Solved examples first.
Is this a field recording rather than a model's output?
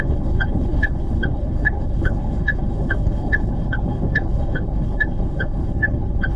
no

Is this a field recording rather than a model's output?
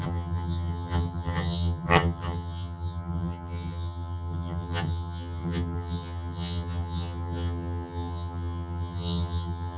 no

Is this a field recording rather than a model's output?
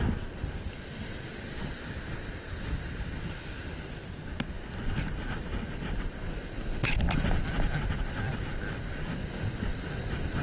yes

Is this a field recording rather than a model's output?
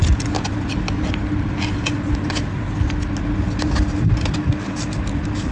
yes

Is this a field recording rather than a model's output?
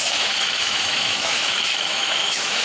no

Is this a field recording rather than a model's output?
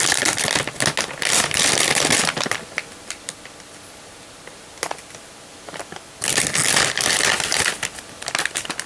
yes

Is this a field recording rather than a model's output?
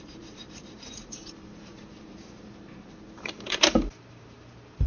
no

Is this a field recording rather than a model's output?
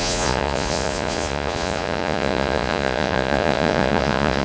no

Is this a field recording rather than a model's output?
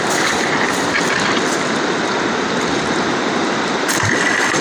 yes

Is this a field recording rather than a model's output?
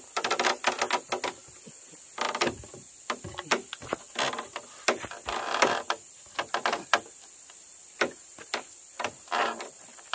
yes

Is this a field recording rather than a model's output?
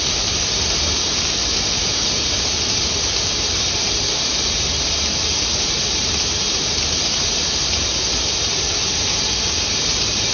no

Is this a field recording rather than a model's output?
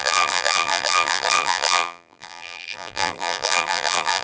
no